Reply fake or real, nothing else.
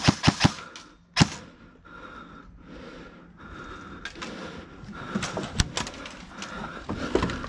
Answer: real